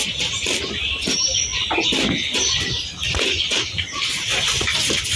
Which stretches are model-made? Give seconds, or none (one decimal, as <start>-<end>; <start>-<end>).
none

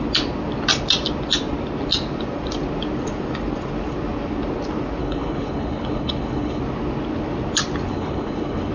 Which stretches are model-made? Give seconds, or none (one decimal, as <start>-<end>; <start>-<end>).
5.0-6.6; 7.9-8.7

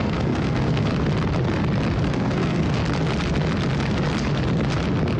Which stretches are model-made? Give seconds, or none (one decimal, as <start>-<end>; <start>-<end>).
0.0-0.9; 1.9-2.8

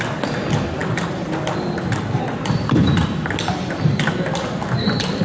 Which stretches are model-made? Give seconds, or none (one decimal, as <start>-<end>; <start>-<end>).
none

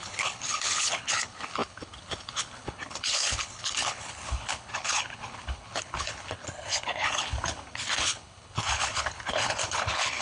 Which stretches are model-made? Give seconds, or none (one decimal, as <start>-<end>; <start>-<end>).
0.0-10.2

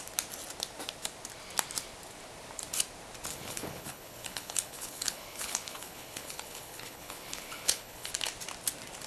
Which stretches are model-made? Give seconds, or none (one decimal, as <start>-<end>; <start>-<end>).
3.3-8.1

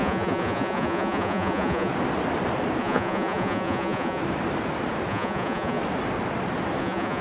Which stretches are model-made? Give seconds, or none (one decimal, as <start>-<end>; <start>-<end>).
0.0-1.9; 2.8-4.2; 5.1-5.8; 6.8-7.2

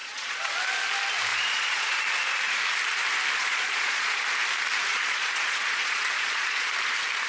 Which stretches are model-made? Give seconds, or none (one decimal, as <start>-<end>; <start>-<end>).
0.0-0.5; 1.3-2.0; 3.4-4.2; 4.9-6.7